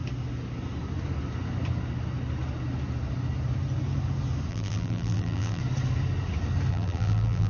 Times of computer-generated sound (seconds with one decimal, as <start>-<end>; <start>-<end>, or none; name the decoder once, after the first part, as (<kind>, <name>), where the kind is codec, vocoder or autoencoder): 4.5-5.6 (vocoder, BigVGAN v2); 6.7-7.5